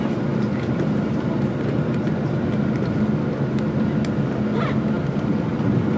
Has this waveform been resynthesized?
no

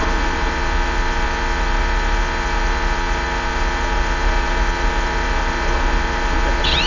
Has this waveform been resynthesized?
yes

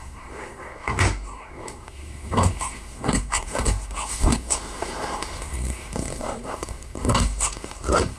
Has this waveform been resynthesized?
yes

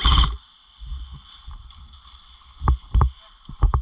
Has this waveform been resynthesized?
no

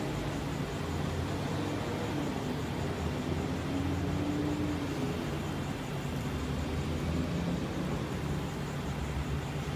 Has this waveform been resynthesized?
no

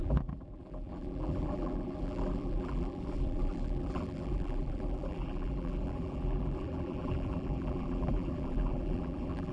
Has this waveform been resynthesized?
yes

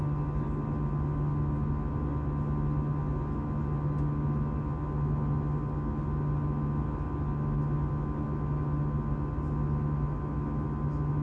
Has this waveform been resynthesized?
no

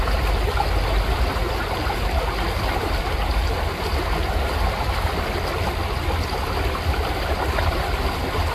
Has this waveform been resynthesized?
no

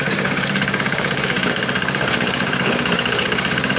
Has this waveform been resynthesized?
yes